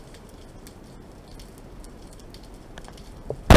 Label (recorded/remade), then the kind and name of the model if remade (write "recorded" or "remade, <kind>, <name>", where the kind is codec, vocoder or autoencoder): recorded